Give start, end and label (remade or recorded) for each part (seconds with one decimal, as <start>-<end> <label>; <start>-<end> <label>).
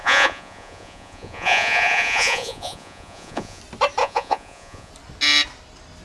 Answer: 0.0-3.6 remade; 3.6-4.0 recorded; 4.0-4.9 remade; 4.9-6.0 recorded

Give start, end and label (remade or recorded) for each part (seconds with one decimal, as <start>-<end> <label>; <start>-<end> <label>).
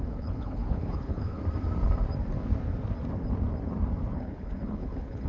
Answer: 0.0-1.4 remade; 1.4-4.1 recorded; 4.1-5.3 remade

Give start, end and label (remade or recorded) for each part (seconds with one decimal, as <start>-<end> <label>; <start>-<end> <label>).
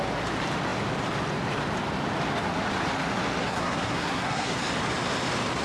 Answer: 0.0-3.4 recorded; 3.4-4.6 remade; 4.6-5.6 recorded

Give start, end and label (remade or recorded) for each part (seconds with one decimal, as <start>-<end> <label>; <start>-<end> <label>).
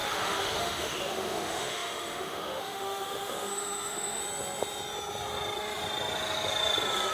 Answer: 0.0-4.2 remade; 4.2-7.1 recorded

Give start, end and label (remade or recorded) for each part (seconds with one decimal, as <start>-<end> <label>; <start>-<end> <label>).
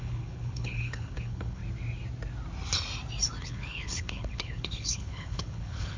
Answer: 0.0-1.6 remade; 1.6-3.4 recorded; 3.4-6.0 remade